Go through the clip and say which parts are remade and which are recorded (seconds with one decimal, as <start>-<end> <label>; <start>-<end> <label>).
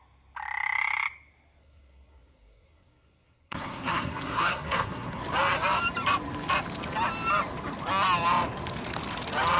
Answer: 0.0-1.6 recorded; 1.6-5.2 remade; 5.2-9.6 recorded